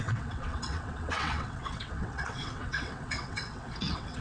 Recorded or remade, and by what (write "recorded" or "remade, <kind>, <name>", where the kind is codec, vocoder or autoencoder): remade, vocoder, WaveNeXt